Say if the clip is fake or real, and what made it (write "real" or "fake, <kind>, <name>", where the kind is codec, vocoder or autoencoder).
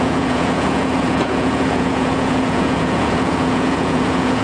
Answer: fake, vocoder, Vocos